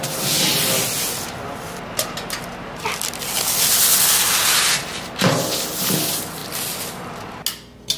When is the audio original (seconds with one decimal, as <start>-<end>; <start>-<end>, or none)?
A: 0.0-8.0